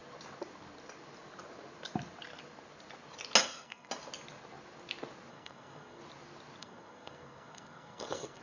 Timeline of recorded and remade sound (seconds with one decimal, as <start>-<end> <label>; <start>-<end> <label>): 0.0-3.4 recorded; 3.4-3.9 remade; 3.9-5.3 recorded; 5.3-6.0 remade; 6.0-6.6 recorded; 6.6-8.4 remade